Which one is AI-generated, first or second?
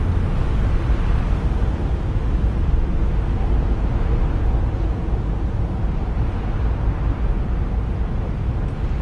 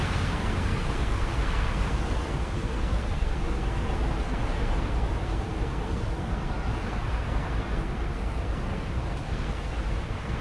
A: second